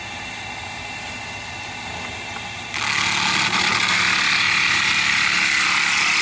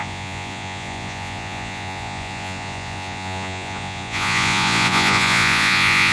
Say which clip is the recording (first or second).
first